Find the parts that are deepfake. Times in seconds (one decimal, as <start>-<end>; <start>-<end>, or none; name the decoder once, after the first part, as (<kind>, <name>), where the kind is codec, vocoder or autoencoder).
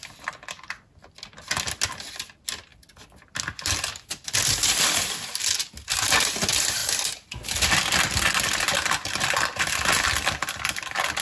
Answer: none